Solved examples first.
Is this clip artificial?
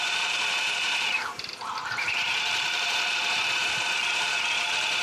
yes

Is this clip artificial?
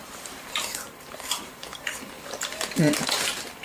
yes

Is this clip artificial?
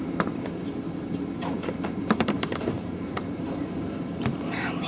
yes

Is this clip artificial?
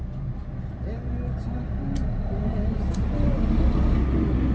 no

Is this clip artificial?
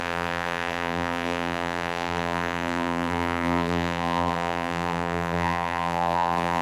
yes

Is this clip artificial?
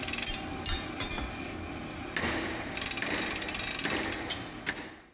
no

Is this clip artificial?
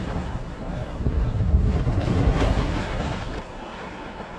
yes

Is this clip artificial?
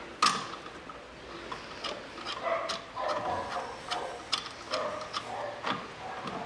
no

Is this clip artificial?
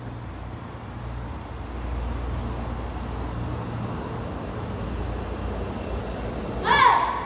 no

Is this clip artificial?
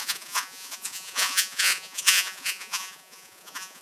yes